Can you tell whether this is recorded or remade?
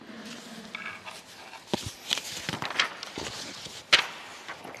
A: recorded